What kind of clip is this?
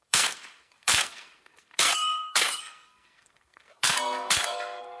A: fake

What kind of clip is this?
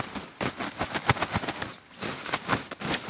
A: real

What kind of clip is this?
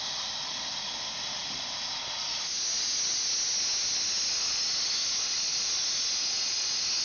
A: real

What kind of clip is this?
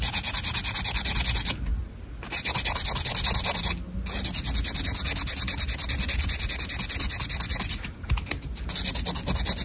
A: real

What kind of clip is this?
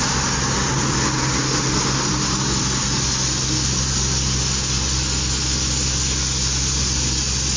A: real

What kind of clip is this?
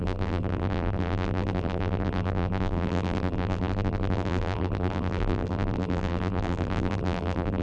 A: fake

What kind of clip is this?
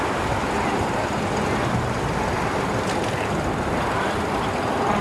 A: real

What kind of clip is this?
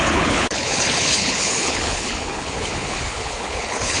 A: fake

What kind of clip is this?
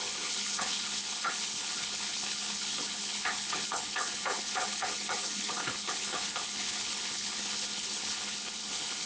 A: fake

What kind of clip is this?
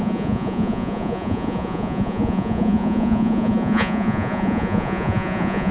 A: fake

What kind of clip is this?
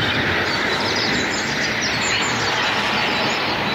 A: real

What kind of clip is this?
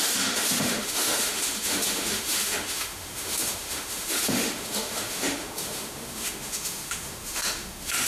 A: fake